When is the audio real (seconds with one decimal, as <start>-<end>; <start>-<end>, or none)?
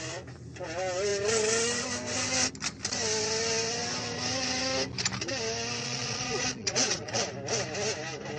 0.0-5.8; 7.2-8.4